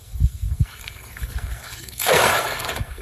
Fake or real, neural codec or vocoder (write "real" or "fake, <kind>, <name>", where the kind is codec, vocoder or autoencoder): fake, codec, SNAC